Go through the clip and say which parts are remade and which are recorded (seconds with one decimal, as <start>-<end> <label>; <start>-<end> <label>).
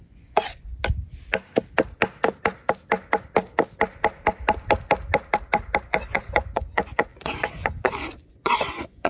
0.0-0.7 remade; 0.7-5.8 recorded; 5.8-9.1 remade